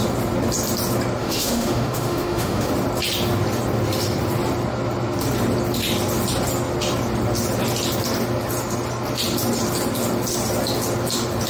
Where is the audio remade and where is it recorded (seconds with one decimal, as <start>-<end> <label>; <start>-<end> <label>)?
0.0-1.2 recorded; 1.2-2.7 remade; 2.7-11.5 recorded